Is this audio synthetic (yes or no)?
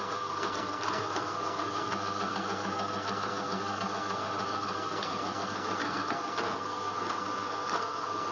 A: yes